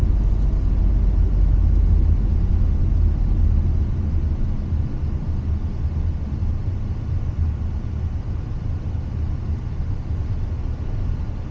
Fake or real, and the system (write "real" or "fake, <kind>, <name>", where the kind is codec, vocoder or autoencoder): real